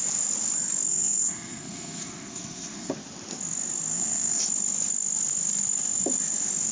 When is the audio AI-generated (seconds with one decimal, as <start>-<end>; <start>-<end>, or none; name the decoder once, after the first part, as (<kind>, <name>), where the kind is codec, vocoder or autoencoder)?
0.9-2.9 (codec, SNAC); 3.9-4.4

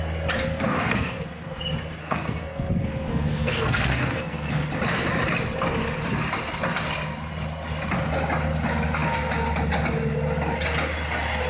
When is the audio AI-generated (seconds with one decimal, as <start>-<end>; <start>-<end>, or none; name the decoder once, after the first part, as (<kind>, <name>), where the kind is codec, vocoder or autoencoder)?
0.5-1.6 (codec, SNAC); 2.0-4.6

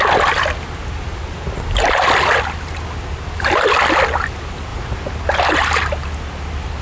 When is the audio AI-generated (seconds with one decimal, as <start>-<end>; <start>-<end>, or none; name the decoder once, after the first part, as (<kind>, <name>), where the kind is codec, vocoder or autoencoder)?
none

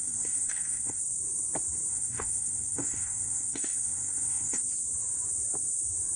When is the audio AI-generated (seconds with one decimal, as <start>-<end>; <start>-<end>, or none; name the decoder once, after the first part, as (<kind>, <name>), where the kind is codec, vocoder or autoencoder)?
0.0-1.0 (codec, SNAC); 1.9-4.6

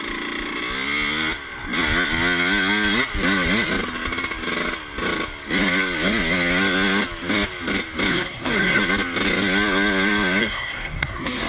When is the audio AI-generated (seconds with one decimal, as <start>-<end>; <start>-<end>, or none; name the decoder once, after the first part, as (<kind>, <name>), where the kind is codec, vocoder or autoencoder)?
8.1-8.8 (codec, SNAC); 10.4-11.5

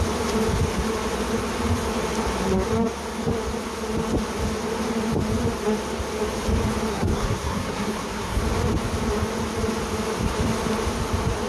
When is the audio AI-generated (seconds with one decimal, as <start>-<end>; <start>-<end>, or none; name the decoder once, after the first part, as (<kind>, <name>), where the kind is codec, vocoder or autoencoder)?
6.9-8.4 (codec, SNAC)